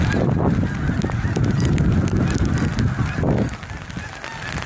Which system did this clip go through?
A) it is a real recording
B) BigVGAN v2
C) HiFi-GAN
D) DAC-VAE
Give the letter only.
A